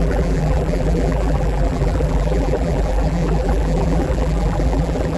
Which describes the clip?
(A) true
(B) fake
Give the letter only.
B